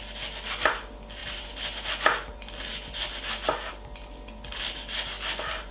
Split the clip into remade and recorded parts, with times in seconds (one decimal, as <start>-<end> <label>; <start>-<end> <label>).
0.0-5.7 recorded